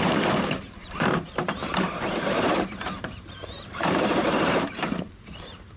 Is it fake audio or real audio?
fake